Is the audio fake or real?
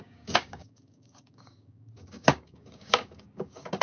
fake